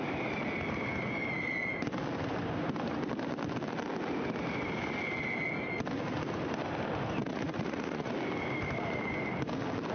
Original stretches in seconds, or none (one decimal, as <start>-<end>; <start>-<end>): 0.0-7.2; 8.1-9.9